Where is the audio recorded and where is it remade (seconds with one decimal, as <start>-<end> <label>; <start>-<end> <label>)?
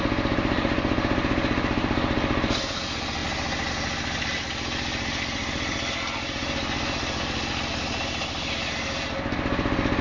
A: 0.0-10.0 recorded